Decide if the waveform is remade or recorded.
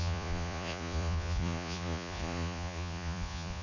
remade